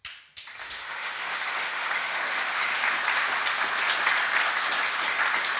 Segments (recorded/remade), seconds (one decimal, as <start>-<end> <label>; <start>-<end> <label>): 0.0-0.6 recorded; 0.6-2.7 remade; 2.7-5.6 recorded